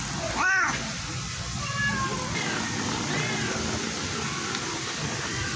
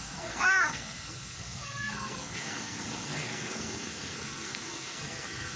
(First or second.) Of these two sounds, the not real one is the second